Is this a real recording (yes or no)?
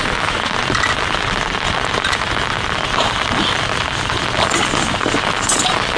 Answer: yes